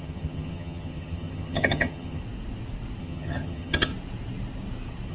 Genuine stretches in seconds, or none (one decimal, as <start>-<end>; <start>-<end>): 2.2-3.0; 3.9-5.1